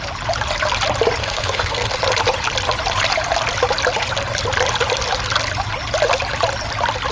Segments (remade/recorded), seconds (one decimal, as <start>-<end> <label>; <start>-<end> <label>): 0.0-1.2 recorded; 1.2-2.0 remade; 2.0-7.1 recorded